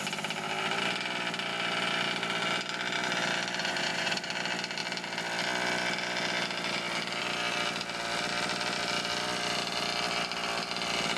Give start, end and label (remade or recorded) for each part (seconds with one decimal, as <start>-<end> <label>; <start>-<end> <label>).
0.0-3.6 recorded; 3.6-4.3 remade; 4.3-11.2 recorded